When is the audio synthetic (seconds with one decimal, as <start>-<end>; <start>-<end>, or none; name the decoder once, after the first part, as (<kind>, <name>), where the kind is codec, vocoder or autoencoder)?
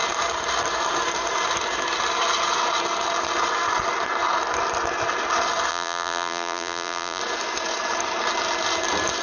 5.7-7.2 (vocoder, BigVGAN v2)